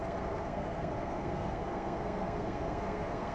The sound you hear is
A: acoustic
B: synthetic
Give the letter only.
B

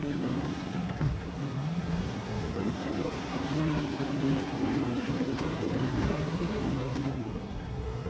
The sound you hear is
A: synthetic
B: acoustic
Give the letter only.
A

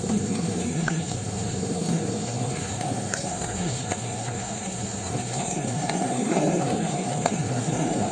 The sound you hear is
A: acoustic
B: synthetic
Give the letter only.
B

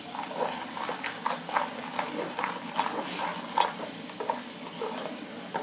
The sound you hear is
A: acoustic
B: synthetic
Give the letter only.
A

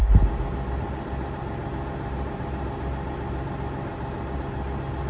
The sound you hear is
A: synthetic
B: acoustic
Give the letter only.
B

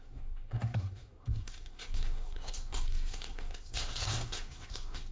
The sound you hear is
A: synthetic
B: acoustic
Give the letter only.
A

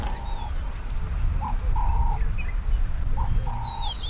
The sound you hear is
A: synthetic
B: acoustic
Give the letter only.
B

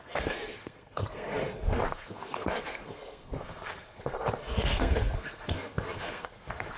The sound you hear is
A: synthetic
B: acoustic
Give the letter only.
A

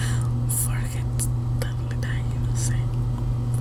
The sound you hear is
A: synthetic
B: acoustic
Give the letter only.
B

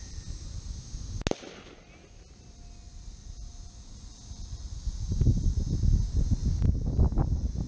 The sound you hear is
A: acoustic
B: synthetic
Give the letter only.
A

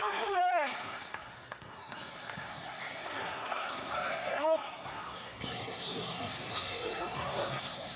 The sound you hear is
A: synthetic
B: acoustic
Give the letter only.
A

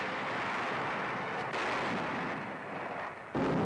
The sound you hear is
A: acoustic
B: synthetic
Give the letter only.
A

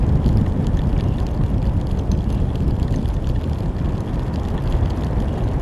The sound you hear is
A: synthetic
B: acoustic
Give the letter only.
B